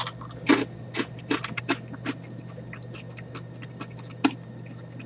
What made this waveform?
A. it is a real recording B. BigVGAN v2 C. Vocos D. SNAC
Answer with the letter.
A